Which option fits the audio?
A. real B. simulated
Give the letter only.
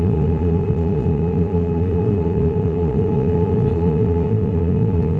B